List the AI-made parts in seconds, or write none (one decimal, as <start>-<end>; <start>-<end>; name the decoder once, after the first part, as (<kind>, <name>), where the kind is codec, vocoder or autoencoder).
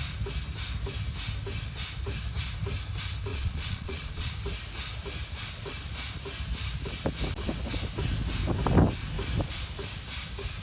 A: 3.3-4.3 (vocoder, Vocos)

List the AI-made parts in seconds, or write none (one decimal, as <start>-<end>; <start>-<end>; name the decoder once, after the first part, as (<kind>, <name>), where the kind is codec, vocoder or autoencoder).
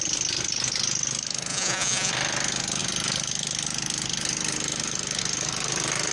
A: 1.5-2.1 (vocoder, Vocos)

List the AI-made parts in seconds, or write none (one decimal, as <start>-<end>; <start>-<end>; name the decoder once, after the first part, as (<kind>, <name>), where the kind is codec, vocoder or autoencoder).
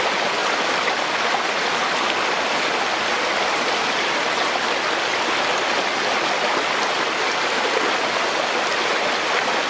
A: none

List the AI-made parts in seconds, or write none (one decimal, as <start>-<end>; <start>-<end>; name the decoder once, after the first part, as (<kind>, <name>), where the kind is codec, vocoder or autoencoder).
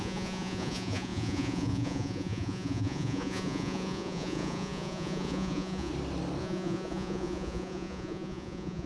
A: 0.0-5.9 (vocoder, Vocos); 6.4-8.9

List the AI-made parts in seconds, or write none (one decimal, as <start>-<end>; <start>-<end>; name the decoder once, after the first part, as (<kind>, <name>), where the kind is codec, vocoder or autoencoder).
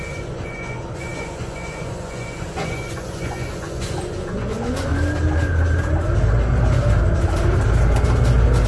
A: 0.0-4.9 (vocoder, Vocos)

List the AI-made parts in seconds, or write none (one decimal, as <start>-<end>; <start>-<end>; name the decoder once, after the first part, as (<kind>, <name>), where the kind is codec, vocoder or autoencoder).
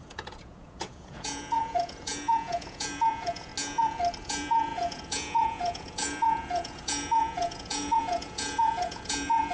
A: 0.0-3.5 (vocoder, Vocos); 4.2-9.5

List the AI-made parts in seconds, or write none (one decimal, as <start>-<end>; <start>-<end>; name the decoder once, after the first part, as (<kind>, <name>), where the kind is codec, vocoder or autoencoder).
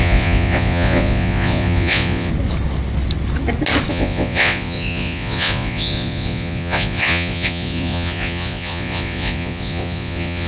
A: 0.0-2.3 (vocoder, Vocos); 3.9-10.5